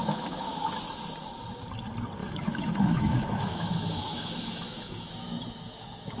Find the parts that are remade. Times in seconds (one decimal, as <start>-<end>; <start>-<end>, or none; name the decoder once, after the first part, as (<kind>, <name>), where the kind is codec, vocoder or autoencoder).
0.0-0.9 (autoencoder, DAC-VAE); 2.2-6.2